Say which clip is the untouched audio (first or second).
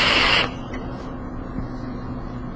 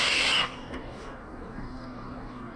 first